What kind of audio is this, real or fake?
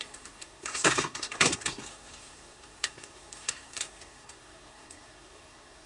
fake